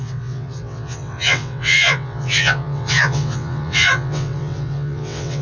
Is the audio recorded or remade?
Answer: remade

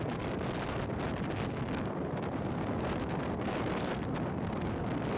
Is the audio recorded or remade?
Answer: recorded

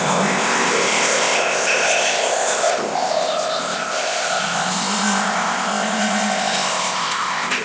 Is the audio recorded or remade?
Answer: remade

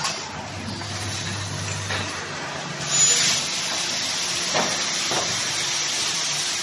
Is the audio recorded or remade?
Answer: recorded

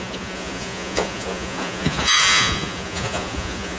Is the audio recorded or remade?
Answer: remade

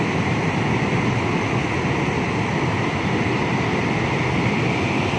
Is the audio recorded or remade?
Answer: recorded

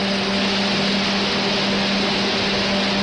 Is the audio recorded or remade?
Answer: recorded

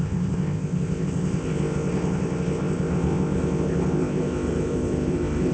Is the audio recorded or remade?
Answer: remade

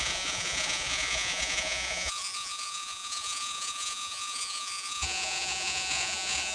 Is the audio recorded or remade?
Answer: remade